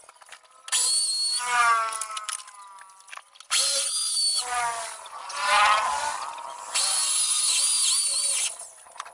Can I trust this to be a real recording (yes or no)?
yes